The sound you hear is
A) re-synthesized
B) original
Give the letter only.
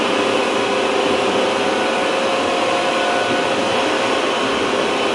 B